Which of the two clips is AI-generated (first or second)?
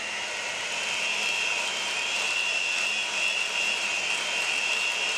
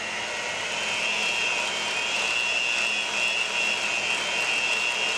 first